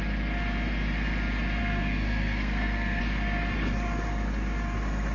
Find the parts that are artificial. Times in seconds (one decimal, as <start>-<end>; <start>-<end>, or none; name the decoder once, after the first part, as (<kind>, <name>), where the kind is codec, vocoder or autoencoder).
1.6-3.0 (codec, SNAC)